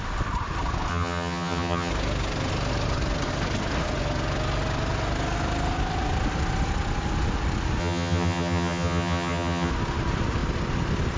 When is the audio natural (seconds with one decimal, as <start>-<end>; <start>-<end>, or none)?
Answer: 0.0-0.9; 1.9-7.8; 9.7-11.2